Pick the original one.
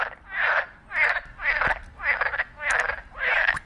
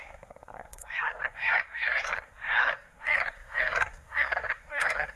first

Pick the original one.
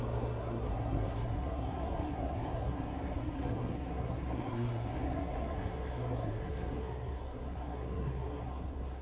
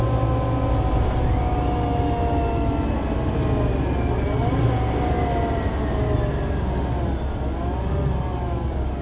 second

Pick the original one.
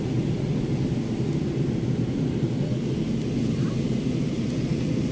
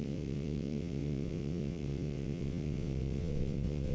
first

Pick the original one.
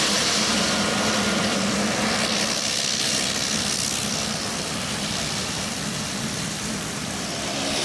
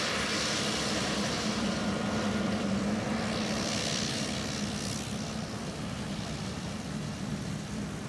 second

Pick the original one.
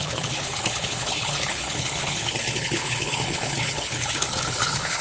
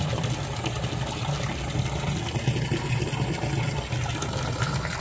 second